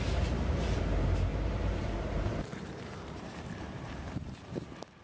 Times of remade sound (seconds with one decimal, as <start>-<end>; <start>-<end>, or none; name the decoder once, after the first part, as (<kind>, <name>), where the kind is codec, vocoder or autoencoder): 1.3-4.3 (vocoder, BigVGAN v2)